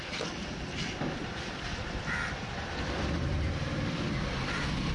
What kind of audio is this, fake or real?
fake